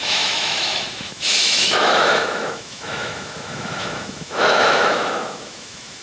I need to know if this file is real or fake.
fake